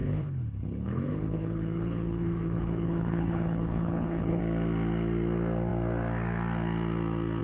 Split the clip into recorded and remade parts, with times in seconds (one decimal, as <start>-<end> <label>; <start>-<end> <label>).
0.0-4.4 remade; 4.4-7.4 recorded